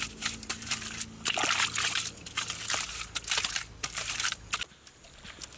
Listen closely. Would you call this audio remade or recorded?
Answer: recorded